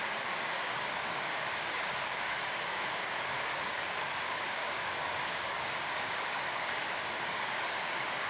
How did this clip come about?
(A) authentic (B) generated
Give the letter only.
B